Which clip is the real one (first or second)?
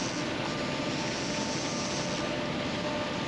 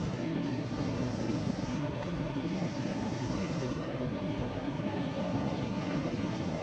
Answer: first